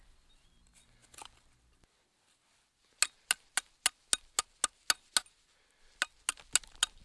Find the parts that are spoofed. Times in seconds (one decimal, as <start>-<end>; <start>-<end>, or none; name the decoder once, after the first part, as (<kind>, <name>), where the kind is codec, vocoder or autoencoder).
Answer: none